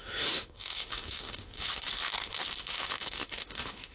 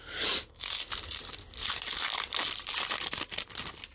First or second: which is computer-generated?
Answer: first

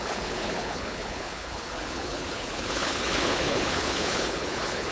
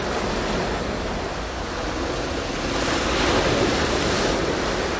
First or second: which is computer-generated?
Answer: first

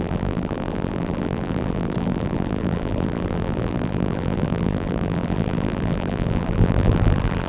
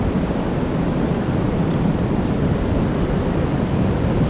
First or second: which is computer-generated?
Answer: first